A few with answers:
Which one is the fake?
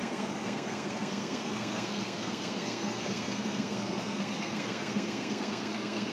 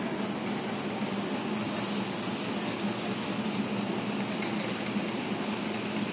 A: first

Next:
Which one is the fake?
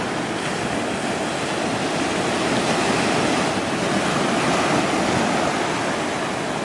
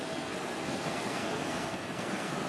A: second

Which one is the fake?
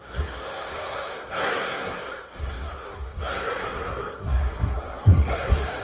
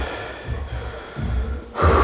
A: first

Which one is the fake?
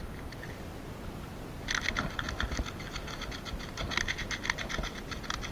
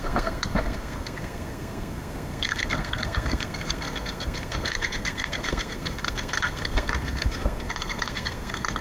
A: second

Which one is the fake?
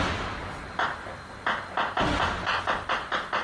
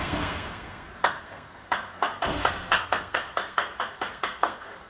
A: second